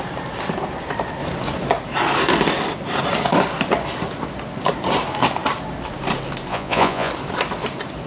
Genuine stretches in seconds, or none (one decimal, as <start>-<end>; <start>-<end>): 0.0-6.5; 7.1-8.1